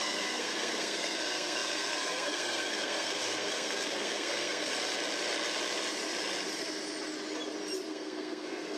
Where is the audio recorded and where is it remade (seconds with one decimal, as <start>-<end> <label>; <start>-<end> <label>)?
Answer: 0.0-4.7 remade; 4.7-7.9 recorded; 7.9-8.8 remade